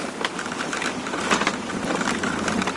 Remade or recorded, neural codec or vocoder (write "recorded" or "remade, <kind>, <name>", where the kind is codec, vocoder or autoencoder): recorded